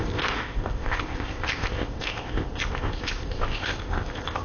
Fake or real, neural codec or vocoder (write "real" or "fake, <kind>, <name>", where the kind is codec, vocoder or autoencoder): fake, codec, ZipCodec